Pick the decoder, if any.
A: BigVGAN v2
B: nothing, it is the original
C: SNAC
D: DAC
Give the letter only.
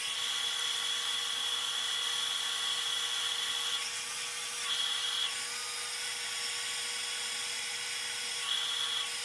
B